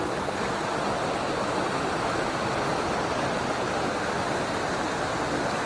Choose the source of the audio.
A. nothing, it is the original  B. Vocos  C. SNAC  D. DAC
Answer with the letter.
A